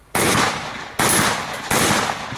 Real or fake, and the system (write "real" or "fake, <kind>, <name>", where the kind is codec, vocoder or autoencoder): real